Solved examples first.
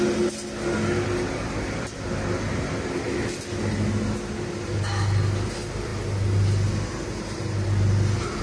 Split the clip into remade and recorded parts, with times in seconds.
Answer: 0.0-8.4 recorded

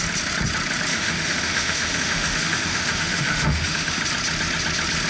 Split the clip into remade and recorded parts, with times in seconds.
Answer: 0.0-0.9 recorded; 0.9-4.0 remade; 4.0-5.1 recorded

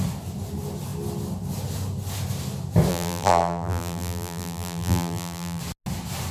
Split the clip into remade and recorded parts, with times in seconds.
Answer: 0.0-2.9 recorded; 2.9-5.6 remade; 5.6-6.3 recorded